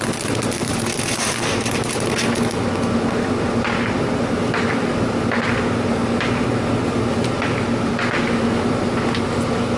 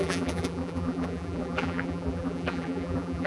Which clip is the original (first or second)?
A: first